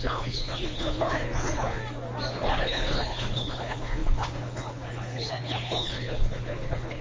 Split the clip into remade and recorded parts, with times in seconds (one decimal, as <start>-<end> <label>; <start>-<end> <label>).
0.0-1.8 remade; 1.8-2.3 recorded; 2.3-7.0 remade